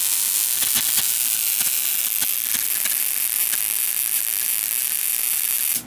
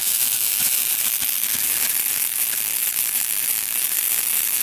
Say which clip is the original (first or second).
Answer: first